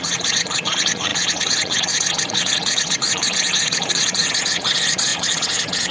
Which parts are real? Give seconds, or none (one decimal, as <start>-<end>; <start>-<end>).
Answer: none